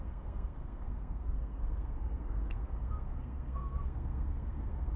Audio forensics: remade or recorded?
remade